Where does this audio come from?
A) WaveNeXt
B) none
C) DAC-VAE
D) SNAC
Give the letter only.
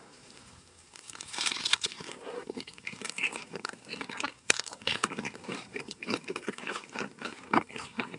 D